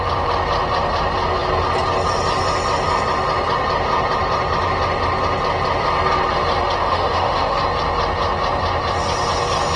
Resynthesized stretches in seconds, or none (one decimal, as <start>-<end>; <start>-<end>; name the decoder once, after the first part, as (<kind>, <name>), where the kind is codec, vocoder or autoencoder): 6.8-7.6 (autoencoder, DAC-VAE)